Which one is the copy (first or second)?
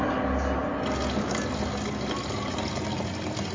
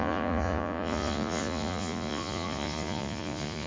second